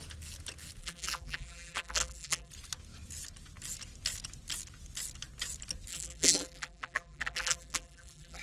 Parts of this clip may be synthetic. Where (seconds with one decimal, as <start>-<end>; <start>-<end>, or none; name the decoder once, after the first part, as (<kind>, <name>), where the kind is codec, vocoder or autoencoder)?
0.8-2.5 (vocoder, BigVGAN v2); 5.9-8.4